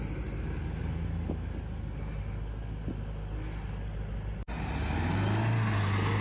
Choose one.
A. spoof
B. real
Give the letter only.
B